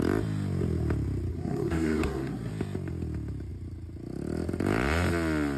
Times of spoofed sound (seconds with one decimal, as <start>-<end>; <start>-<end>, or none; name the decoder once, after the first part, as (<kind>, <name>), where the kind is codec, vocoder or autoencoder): 1.3-2.5 (codec, SNAC)